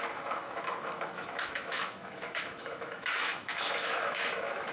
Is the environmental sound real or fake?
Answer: fake